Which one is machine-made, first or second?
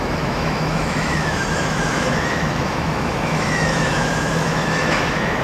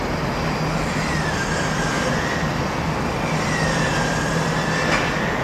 first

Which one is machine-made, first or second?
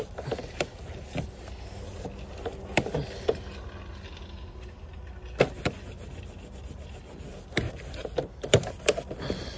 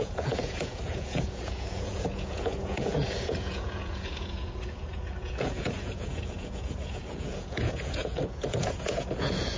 second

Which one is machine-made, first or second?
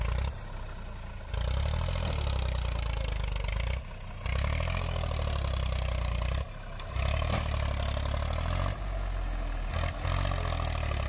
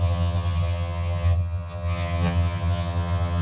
second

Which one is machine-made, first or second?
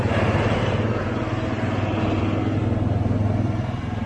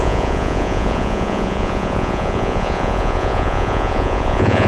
second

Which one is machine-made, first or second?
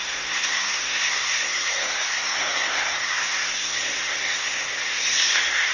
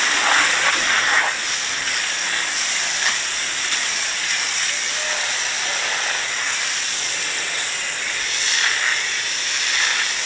first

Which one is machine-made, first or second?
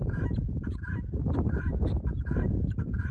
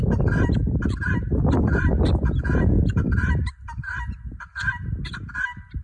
first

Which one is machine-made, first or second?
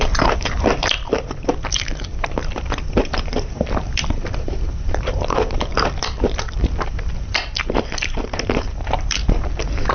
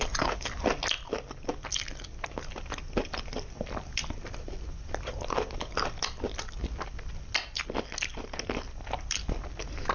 first